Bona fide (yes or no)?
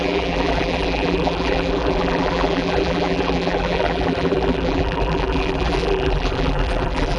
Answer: no